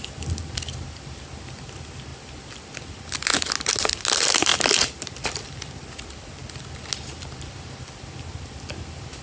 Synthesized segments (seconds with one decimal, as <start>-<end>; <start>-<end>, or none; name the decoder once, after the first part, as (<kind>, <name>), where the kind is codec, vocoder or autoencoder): none